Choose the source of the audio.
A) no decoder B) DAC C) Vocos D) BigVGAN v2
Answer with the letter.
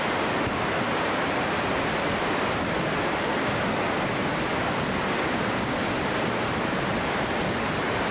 A